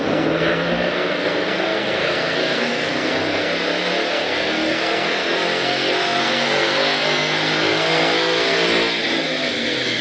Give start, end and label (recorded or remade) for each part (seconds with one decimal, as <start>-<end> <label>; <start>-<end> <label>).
0.0-3.5 remade; 3.5-4.1 recorded; 4.1-10.0 remade